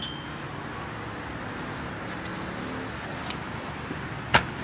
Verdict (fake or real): real